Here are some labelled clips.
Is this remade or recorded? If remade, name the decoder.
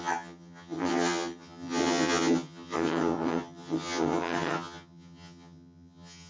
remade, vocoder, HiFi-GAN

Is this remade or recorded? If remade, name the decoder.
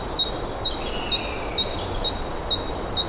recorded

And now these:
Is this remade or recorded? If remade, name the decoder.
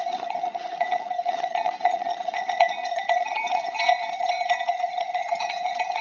remade, vocoder, HiFi-GAN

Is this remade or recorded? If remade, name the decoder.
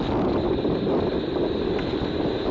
recorded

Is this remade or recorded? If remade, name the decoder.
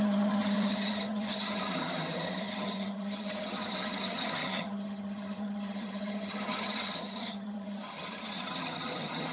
remade, vocoder, HiFi-GAN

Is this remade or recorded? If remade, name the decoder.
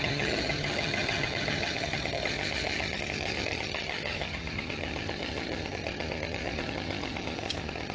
remade, vocoder, HiFi-GAN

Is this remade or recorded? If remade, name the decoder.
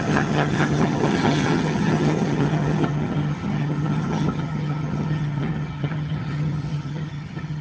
remade, vocoder, HiFi-GAN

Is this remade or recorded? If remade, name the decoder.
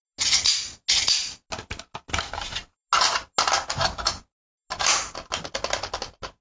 recorded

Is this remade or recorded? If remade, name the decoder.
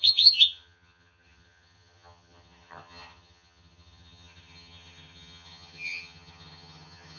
remade, vocoder, HiFi-GAN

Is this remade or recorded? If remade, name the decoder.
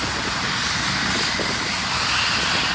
recorded